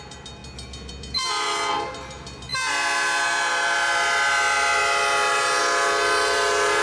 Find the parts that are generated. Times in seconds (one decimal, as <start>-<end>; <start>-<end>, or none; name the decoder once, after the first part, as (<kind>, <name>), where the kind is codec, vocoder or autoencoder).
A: none